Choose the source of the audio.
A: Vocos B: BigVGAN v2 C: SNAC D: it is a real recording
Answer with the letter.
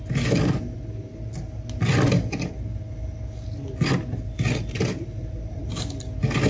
D